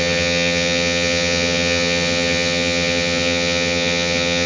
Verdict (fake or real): fake